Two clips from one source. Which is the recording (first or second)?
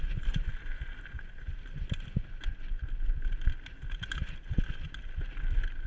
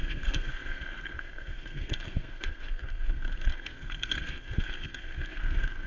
first